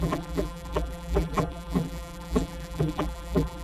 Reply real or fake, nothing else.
fake